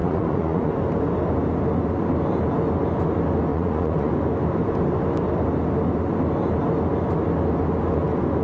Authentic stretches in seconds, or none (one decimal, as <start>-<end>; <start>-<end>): 0.7-3.5; 4.1-8.4